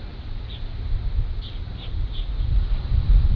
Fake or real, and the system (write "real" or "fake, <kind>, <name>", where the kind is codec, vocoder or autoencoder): fake, vocoder, BigVGAN v2